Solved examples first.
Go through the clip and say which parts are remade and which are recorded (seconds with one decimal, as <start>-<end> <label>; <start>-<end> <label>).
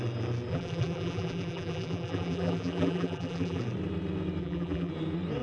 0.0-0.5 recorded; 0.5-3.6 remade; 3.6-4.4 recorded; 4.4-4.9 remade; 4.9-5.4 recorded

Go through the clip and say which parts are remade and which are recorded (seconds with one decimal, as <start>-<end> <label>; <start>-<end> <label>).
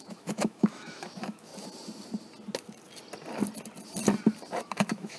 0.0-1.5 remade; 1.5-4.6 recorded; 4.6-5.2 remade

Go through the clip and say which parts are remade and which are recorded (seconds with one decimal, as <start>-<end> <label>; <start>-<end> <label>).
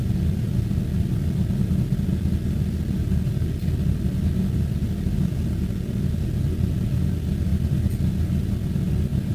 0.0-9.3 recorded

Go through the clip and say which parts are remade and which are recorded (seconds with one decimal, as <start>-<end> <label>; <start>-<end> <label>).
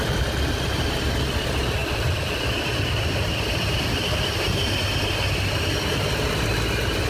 0.0-1.8 recorded; 1.8-4.4 remade; 4.4-7.1 recorded